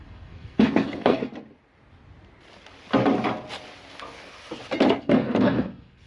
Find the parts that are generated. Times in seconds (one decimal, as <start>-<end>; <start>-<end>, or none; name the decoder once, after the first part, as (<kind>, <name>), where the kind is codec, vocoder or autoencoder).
0.0-1.2 (codec, SNAC); 4.9-6.1